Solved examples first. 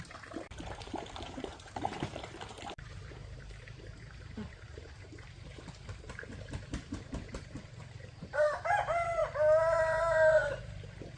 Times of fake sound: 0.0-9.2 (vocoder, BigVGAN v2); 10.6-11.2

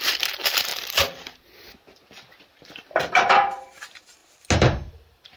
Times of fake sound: 0.0-0.7 (vocoder, BigVGAN v2); 3.1-4.2; 4.9-5.4

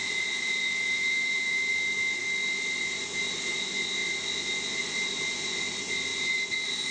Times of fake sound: 0.0-1.7 (vocoder, BigVGAN v2); 6.1-6.9

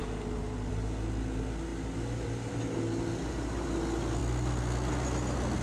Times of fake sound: none

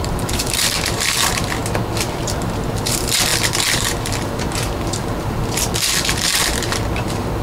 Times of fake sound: 0.0-1.6 (vocoder, BigVGAN v2); 2.7-7.4

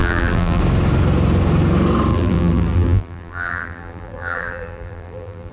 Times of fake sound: 0.0-0.6 (vocoder, BigVGAN v2); 2.1-5.5

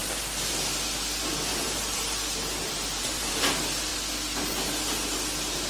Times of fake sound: 1.5-3.3 (vocoder, BigVGAN v2)